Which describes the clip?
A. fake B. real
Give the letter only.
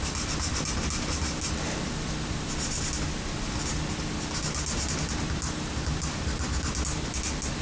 B